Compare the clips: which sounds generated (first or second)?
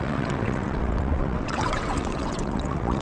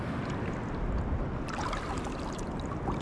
first